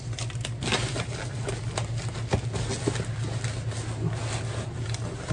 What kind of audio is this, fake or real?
real